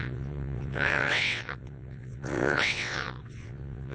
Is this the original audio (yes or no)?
no